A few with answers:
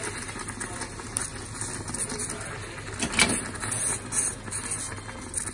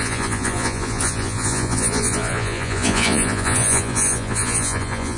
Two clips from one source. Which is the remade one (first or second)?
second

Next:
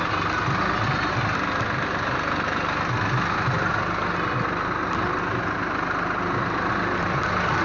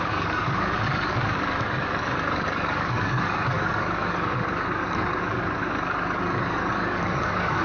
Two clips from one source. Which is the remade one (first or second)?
second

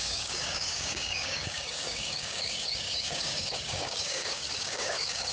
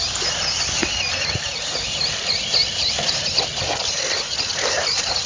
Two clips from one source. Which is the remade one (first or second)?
first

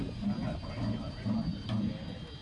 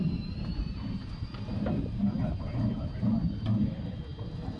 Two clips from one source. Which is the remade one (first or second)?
second